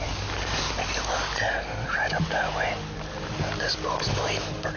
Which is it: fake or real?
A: real